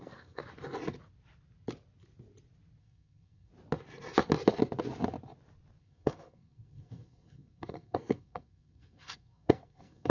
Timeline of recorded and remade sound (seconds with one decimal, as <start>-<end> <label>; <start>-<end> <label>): 0.0-0.4 remade; 0.4-2.8 recorded; 2.8-3.5 remade; 3.5-5.8 recorded; 5.8-10.1 remade